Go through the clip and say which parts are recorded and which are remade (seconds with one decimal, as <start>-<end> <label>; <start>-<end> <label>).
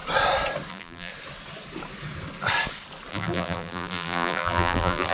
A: 0.0-0.7 recorded; 0.7-1.1 remade; 1.1-3.1 recorded; 3.1-5.1 remade